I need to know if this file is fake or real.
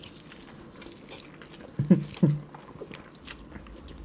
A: real